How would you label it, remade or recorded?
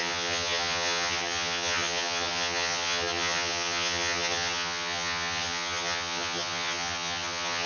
remade